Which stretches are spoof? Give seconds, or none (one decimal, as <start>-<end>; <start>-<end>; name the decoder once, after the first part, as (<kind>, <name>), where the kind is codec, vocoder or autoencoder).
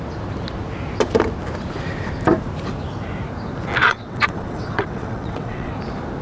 3.8-5.7 (vocoder, WaveNeXt)